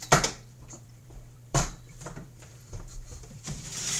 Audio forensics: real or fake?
fake